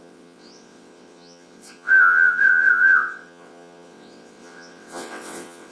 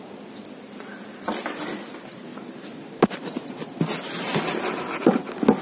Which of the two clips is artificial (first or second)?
first